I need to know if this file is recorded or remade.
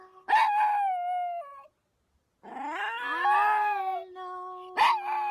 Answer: recorded